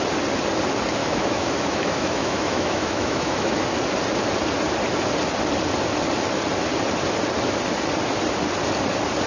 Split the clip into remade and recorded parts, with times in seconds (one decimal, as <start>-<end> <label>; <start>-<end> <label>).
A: 0.0-1.0 recorded; 1.0-3.7 remade; 3.7-9.3 recorded